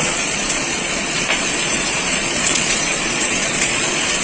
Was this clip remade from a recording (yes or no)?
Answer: yes